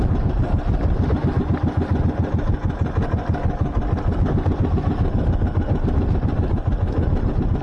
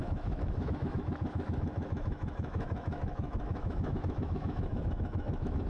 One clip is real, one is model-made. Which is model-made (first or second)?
second